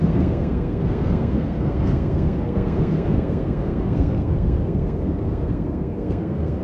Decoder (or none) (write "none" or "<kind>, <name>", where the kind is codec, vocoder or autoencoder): codec, SNAC